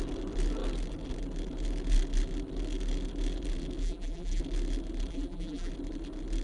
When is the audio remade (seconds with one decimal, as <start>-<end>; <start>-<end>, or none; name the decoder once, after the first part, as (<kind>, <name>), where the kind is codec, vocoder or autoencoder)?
3.8-4.4 (vocoder, BigVGAN v2); 5.1-5.7